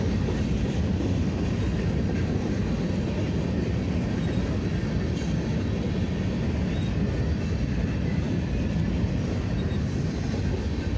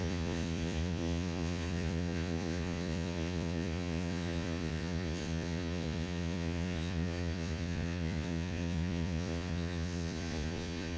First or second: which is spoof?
second